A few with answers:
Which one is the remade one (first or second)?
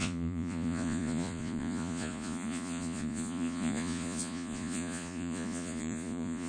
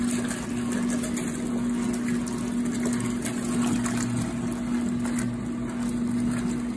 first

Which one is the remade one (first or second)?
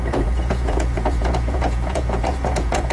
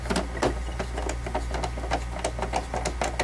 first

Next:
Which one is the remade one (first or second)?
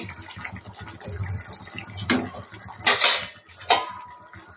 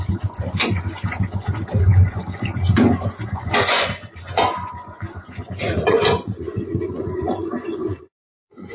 second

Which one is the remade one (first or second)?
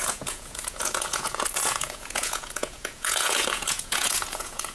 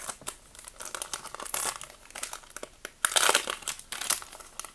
first